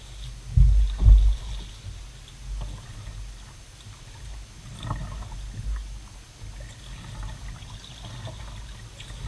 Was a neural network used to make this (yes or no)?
no